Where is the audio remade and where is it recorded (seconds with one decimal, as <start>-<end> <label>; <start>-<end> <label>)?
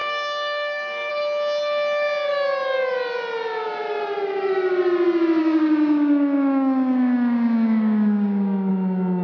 0.0-1.1 remade; 1.1-5.4 recorded; 5.4-8.7 remade; 8.7-9.2 recorded